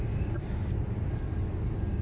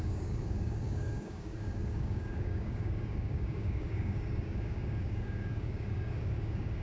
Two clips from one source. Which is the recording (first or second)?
first